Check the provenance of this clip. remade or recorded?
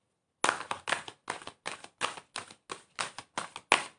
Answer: recorded